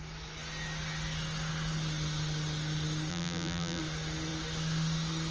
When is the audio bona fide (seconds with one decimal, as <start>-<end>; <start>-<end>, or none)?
0.0-3.1; 3.8-5.3